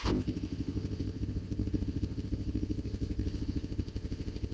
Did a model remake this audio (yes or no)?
yes